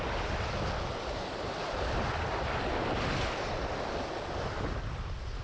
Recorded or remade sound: recorded